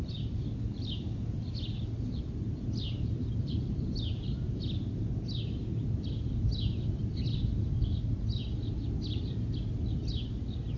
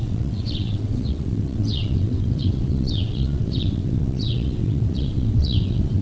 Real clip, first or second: first